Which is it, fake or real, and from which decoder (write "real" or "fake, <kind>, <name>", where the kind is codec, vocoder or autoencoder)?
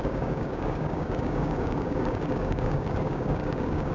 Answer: fake, codec, DAC